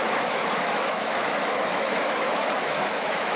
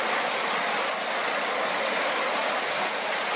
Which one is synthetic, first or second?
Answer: first